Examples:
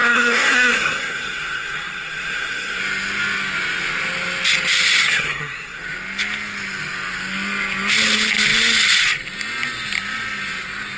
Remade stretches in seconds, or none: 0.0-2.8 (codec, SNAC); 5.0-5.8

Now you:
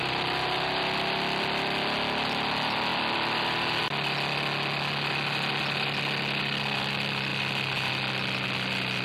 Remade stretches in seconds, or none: none

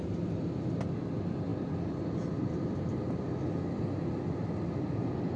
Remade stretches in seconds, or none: none

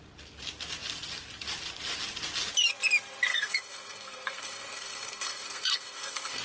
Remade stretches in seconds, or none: 3.3-6.4 (codec, SNAC)

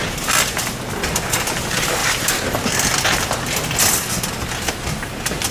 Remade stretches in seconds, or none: none